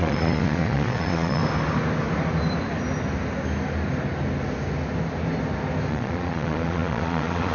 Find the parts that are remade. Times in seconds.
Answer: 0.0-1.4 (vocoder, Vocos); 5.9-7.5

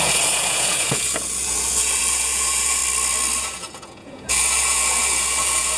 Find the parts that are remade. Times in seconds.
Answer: 0.0-2.8 (vocoder, Vocos); 3.4-5.8

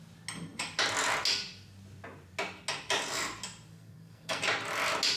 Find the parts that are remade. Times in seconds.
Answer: 3.7-4.4 (codec, SNAC)

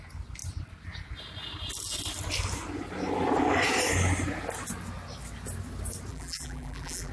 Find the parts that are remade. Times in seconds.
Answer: 6.1-7.1 (vocoder, BigVGAN v2)

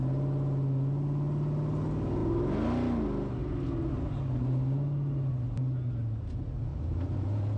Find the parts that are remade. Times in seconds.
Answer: 6.7-7.6 (vocoder, BigVGAN v2)

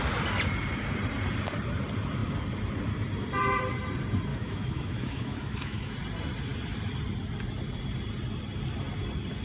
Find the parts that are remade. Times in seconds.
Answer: 4.3-5.9 (autoencoder, DAC-VAE)

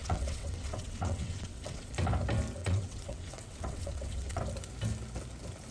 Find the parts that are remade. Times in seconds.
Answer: 0.0-1.9 (vocoder, WaveNeXt); 2.6-4.4

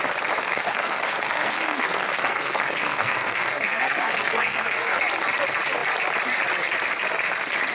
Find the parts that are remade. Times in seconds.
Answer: 0.4-5.0 (codec, SNAC)